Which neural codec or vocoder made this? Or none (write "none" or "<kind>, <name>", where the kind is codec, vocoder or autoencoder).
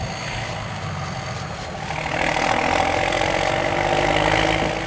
none